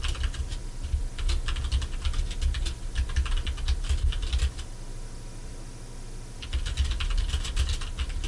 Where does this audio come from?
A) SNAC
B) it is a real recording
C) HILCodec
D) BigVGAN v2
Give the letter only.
B